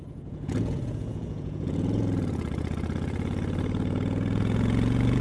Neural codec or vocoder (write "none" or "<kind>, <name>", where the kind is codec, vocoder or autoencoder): vocoder, Vocos